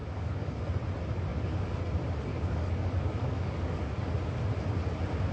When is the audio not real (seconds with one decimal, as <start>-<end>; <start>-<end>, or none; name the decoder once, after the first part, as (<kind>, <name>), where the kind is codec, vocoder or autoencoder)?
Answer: 0.0-0.6 (codec, DAC); 1.3-1.8; 2.3-4.1